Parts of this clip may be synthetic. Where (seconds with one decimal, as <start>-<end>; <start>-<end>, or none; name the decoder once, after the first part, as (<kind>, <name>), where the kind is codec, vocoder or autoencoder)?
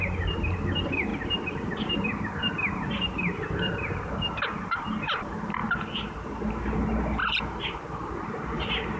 0.0-9.0 (vocoder, BigVGAN v2)